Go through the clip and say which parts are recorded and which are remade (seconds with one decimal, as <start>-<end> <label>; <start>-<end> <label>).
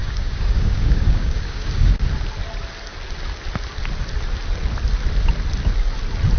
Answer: 0.0-1.9 remade; 1.9-6.4 recorded